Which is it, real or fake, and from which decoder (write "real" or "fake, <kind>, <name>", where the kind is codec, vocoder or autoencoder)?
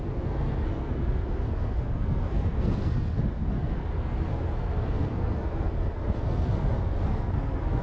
fake, codec, SNAC